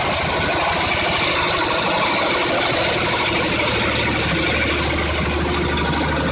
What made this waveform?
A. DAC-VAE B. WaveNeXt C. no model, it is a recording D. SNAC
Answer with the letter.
C